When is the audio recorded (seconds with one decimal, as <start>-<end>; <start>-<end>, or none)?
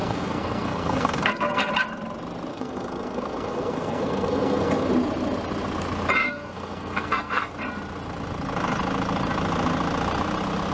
1.7-2.5; 4.9-6.2; 7.5-10.7